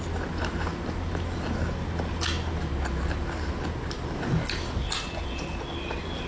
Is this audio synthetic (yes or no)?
no